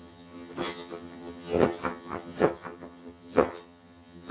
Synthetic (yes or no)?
yes